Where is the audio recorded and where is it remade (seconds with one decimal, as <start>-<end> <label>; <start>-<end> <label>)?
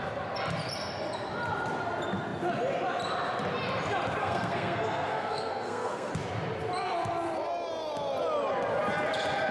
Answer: 0.0-4.2 recorded; 4.2-6.1 remade; 6.1-9.5 recorded